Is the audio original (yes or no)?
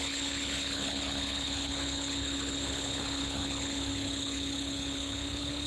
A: no